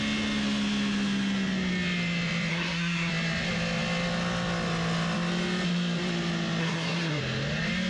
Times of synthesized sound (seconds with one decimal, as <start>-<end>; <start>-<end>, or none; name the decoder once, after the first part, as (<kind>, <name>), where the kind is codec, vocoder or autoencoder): 2.5-3.1 (codec, SNAC); 6.6-7.2